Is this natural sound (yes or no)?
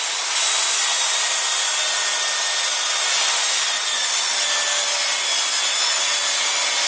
yes